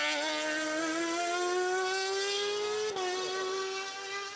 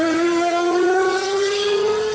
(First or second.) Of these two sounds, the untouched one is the first